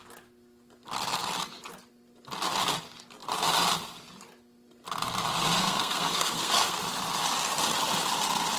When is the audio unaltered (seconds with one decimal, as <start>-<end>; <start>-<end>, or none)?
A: 0.0-5.6; 6.9-8.6